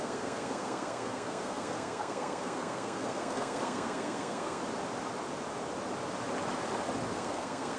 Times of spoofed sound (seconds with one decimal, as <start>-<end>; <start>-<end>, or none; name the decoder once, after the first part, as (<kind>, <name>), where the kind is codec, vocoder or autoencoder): 0.0-4.6 (codec, SNAC); 7.1-7.8